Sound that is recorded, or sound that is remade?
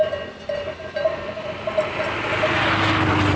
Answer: recorded